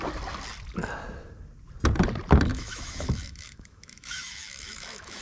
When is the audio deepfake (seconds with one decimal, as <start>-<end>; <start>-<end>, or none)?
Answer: 2.5-5.2

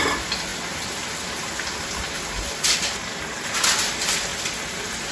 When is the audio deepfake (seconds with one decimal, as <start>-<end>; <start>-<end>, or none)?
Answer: none